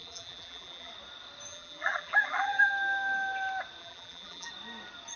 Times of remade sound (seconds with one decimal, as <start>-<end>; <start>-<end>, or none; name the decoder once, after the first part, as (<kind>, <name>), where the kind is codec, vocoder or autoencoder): 0.0-0.9 (vocoder, BigVGAN v2); 1.5-2.7; 3.8-4.5

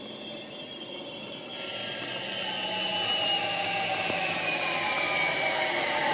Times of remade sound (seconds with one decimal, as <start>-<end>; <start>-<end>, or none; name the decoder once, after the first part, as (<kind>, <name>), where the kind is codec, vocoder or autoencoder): none

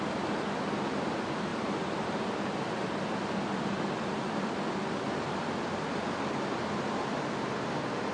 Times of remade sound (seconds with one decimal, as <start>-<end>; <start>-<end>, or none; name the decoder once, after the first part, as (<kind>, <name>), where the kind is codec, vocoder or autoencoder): none

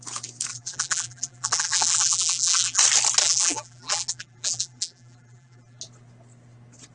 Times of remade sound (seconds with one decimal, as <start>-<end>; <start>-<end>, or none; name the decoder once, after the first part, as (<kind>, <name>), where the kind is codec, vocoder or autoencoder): 0.5-2.8 (vocoder, BigVGAN v2); 3.2-5.8

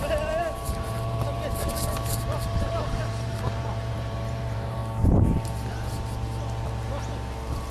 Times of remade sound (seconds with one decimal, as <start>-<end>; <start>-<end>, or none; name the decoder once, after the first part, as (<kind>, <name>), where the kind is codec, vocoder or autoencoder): 0.0-4.8 (vocoder, BigVGAN v2)

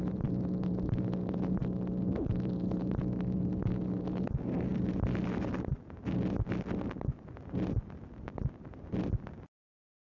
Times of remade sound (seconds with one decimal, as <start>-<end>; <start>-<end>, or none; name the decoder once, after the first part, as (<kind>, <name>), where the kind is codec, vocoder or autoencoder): none